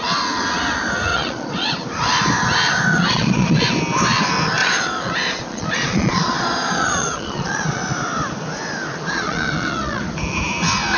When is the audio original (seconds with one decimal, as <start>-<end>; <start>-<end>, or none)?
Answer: 0.0-1.1; 1.7-2.9; 3.6-4.6; 7.8-8.9; 10.0-11.0